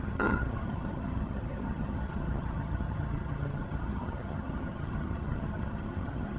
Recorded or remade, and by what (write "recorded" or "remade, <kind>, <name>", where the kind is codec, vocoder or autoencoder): remade, vocoder, HiFi-GAN